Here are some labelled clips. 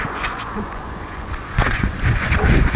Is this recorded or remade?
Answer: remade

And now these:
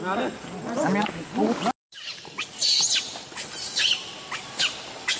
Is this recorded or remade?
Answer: recorded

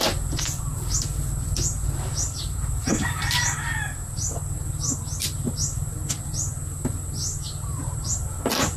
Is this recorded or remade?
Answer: recorded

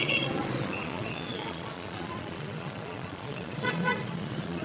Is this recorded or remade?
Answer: remade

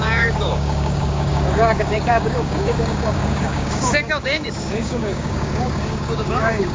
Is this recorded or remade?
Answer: remade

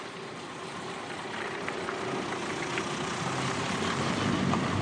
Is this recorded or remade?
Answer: recorded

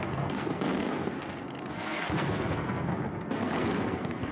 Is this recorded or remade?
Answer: remade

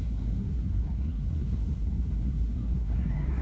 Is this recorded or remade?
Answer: remade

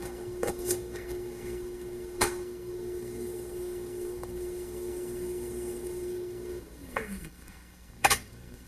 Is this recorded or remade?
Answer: remade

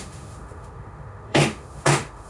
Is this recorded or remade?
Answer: remade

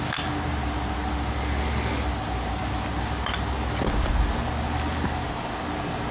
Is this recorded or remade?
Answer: recorded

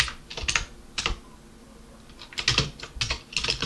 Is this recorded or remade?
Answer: recorded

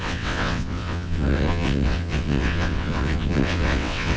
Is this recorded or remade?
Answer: remade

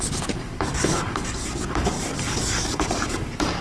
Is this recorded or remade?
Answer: remade